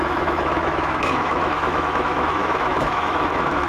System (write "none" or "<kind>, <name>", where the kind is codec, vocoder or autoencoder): autoencoder, DAC-VAE